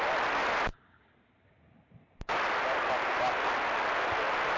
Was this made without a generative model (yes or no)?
yes